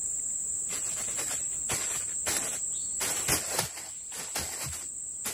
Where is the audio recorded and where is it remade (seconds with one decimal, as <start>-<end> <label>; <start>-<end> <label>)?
0.0-5.3 recorded